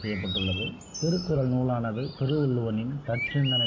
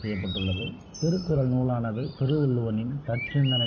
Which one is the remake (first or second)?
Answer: second